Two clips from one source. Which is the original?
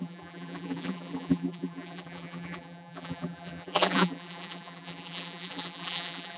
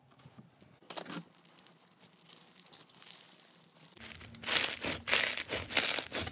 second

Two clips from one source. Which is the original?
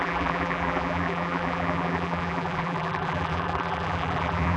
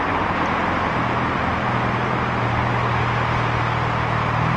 second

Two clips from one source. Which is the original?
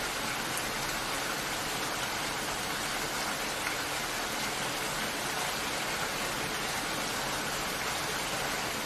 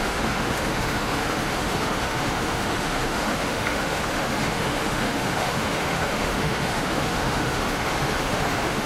first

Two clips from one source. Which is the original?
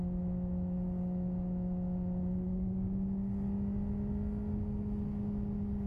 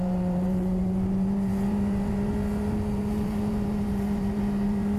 first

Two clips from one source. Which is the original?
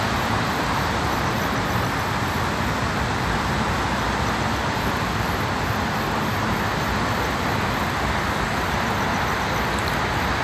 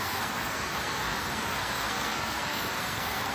first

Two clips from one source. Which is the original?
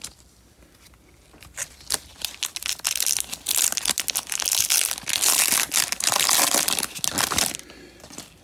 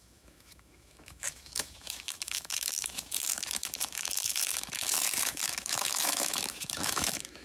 first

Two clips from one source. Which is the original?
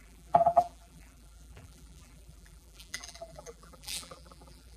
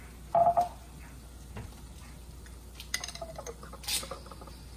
second